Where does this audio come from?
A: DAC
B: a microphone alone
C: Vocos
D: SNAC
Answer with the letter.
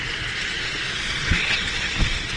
C